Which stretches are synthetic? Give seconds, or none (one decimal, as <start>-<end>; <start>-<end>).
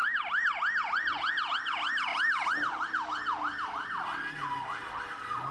none